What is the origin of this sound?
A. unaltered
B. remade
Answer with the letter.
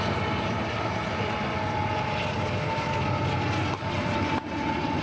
A